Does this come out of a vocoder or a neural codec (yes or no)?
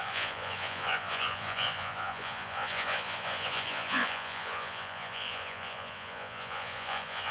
yes